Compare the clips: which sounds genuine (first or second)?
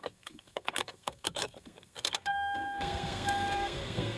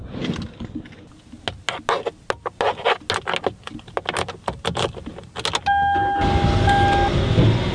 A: second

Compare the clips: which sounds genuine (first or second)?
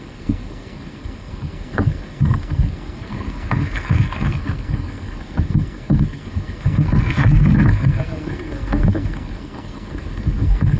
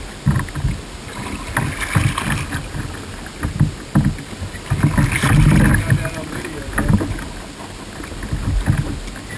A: second